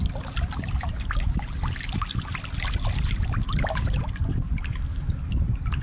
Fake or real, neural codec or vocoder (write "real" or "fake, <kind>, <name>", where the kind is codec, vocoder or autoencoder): real